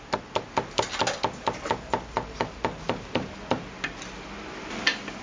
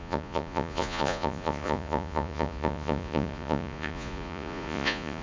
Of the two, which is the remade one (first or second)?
second